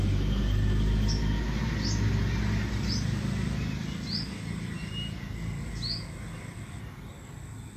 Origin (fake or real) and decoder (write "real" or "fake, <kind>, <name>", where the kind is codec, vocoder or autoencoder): real